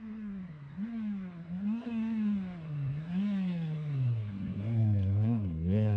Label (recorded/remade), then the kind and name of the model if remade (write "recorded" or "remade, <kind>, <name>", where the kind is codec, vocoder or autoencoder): remade, codec, SNAC